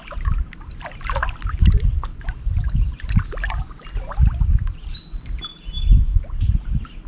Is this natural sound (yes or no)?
yes